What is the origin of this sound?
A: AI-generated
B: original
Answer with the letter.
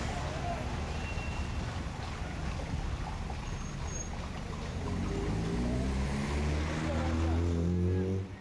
B